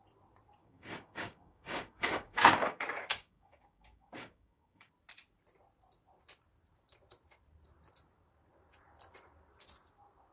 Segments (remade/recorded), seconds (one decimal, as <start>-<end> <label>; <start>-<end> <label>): 0.0-0.6 recorded; 0.6-4.9 remade; 4.9-10.3 recorded